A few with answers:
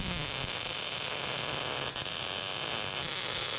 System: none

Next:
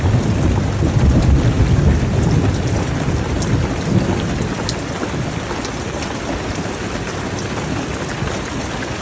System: vocoder, BigVGAN v2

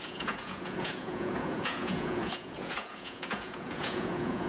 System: vocoder, Vocos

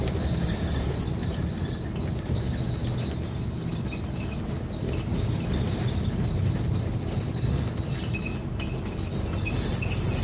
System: none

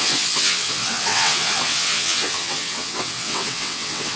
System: vocoder, WaveNeXt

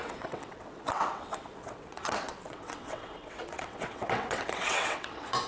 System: vocoder, WaveNeXt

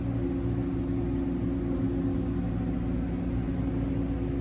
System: none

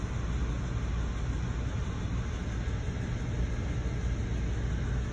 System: none